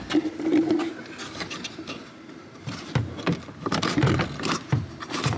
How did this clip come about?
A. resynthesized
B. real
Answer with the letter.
B